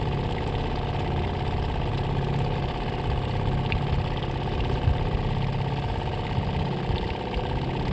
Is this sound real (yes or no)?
yes